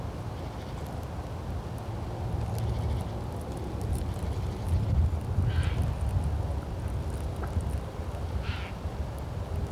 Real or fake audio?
real